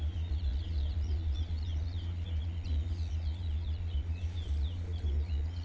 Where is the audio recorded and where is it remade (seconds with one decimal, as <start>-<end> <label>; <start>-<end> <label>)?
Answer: 0.0-5.6 remade